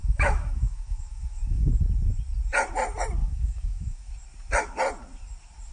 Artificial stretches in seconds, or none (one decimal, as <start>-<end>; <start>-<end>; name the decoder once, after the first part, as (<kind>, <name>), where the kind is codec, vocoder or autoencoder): 0.0-1.7 (autoencoder, DAC-VAE); 3.2-4.1

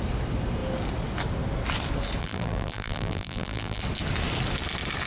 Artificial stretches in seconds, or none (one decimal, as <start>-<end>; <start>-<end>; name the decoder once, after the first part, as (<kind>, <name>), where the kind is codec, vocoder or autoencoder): 2.2-3.8 (vocoder, BigVGAN v2)

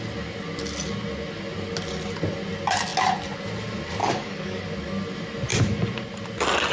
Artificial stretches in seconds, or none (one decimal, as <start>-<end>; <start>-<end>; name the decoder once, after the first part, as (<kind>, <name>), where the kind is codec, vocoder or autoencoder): 4.0-4.6 (codec, DAC)

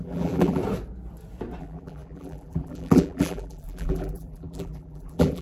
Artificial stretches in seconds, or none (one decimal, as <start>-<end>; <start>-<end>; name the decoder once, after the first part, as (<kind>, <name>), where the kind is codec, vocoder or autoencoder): 0.0-0.6 (vocoder, BigVGAN v2); 1.6-5.4

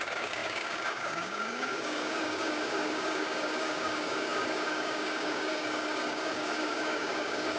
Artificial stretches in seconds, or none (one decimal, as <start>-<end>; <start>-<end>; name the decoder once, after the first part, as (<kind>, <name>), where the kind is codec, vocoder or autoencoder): 0.0-7.6 (codec, DAC)

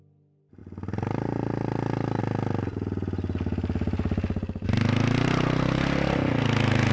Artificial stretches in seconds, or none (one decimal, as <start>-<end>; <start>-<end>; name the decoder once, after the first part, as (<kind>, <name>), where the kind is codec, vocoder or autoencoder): none

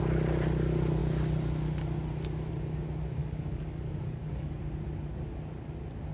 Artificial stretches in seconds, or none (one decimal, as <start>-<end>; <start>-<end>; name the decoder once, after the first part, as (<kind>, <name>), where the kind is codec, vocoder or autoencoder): 3.2-4.5 (codec, DAC)

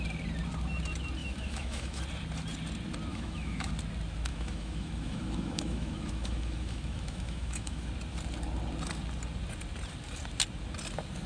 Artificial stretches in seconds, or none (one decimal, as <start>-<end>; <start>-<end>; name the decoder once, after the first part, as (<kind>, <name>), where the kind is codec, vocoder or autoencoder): 1.2-2.0 (autoencoder, DAC-VAE); 3.1-3.7; 4.3-7.9